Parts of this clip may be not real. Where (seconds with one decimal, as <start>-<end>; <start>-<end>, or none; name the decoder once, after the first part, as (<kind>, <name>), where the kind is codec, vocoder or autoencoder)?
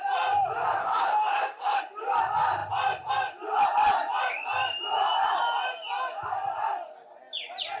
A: 0.8-1.8 (autoencoder, DAC-VAE)